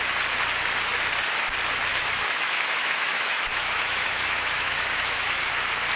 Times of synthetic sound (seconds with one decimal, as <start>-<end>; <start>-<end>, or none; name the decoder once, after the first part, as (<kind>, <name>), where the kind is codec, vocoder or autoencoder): 1.9-5.5 (autoencoder, DAC-VAE)